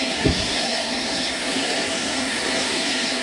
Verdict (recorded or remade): remade